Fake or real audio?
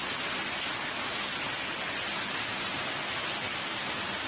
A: real